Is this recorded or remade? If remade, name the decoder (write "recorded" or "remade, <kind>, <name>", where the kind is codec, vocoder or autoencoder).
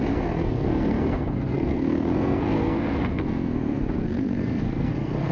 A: remade, codec, SNAC